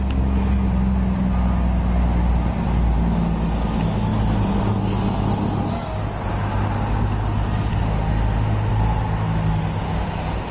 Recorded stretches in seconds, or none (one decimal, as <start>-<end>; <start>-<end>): 0.0-7.8; 8.7-10.5